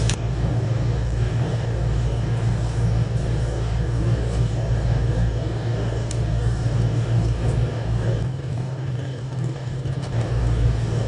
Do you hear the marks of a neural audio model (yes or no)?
yes